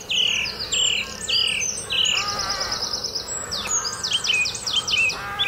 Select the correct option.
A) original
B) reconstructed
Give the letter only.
A